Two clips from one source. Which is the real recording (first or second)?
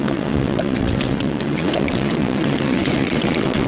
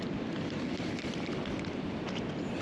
second